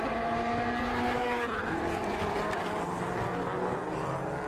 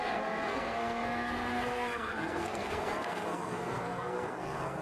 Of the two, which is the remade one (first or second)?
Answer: second